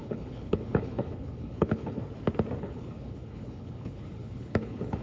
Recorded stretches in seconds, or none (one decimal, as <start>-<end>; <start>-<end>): 2.0-2.6